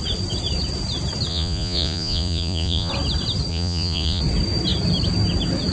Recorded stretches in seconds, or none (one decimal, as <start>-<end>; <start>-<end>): 0.0-1.3; 2.9-3.5; 4.2-5.7